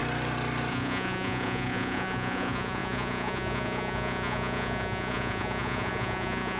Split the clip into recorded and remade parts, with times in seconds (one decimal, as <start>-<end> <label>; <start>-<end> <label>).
0.0-0.7 recorded; 0.7-6.6 remade